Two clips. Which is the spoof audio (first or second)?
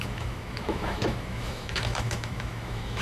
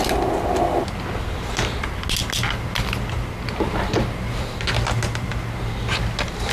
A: first